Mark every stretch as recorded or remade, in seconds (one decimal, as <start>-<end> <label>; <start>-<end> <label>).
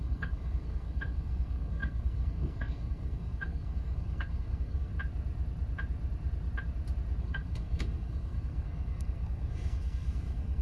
0.0-4.9 remade; 4.9-7.2 recorded; 7.2-10.6 remade